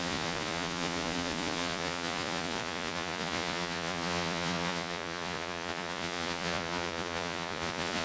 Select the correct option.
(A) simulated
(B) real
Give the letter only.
A